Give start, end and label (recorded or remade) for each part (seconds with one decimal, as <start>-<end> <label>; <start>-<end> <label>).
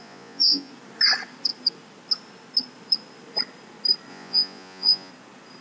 0.0-0.7 remade; 0.7-4.1 recorded; 4.1-5.1 remade; 5.1-5.6 recorded